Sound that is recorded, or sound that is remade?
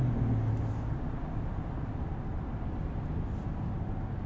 recorded